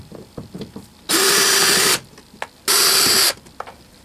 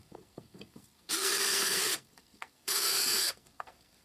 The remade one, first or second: second